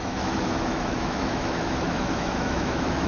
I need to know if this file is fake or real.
fake